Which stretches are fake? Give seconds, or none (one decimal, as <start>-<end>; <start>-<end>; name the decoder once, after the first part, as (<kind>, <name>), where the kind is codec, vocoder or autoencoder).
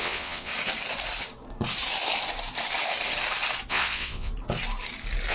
0.0-0.5 (vocoder, WaveNeXt); 3.7-4.3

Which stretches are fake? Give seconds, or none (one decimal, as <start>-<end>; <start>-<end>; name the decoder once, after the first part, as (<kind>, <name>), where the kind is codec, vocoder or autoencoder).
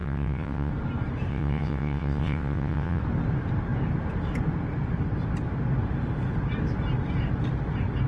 0.0-0.7 (vocoder, WaveNeXt); 1.3-3.0